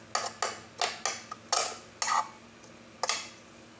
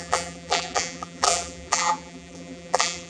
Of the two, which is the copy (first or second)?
second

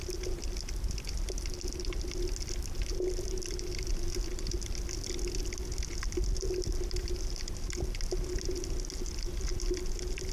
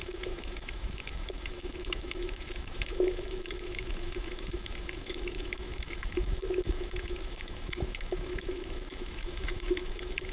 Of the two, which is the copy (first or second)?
second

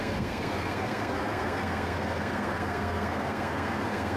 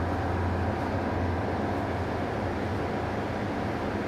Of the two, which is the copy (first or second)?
first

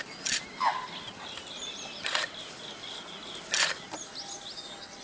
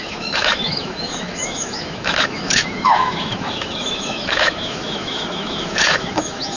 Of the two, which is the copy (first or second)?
second